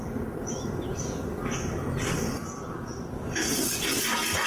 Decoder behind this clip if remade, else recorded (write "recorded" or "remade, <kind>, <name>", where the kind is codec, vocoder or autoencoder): recorded